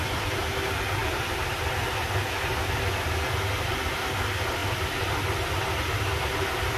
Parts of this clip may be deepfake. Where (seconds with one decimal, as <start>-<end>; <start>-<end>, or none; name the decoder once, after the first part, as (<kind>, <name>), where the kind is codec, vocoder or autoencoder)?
none